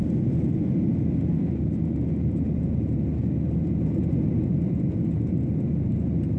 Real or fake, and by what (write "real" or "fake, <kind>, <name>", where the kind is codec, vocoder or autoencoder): real